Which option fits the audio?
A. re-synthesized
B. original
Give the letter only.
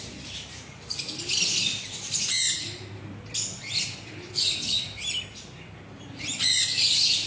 B